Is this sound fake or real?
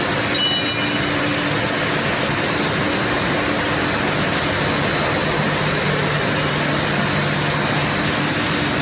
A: real